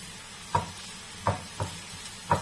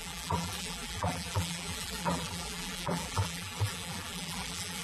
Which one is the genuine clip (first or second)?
first